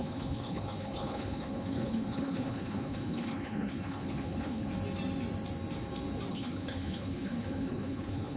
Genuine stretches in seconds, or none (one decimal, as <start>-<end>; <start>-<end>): 4.7-6.3